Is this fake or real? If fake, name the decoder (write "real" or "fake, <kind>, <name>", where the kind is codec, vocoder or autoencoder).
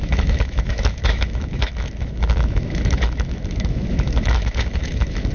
fake, autoencoder, DAC-VAE